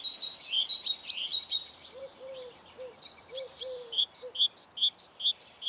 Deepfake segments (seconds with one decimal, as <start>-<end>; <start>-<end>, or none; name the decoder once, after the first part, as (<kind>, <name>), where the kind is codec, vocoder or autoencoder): 1.3-4.3 (vocoder, BigVGAN v2)